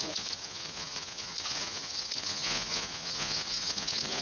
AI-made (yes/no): yes